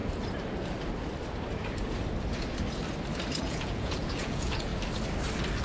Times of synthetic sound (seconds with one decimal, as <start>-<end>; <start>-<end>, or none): 3.4-4.7